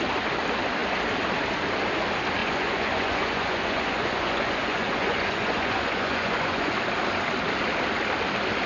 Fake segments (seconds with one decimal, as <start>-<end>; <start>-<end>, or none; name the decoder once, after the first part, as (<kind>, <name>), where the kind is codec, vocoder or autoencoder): 2.4-6.8 (vocoder, Vocos)